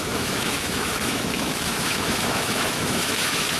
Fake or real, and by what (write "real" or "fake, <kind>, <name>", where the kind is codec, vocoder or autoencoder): fake, autoencoder, DAC-VAE